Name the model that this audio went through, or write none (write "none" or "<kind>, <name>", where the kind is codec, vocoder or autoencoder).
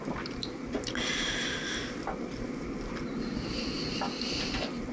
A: none